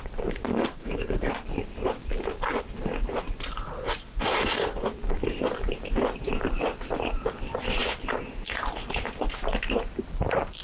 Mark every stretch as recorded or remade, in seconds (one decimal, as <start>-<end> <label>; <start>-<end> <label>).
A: 0.0-0.5 recorded; 0.5-1.3 remade; 1.3-10.6 recorded